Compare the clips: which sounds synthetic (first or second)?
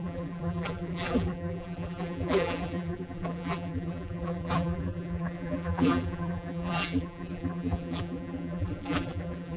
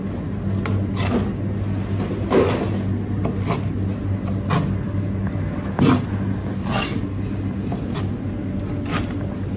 first